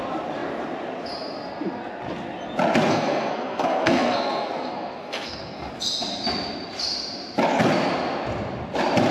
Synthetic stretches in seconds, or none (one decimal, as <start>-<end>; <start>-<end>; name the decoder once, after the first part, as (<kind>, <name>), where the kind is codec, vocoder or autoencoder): 2.9-5.7 (codec, SNAC)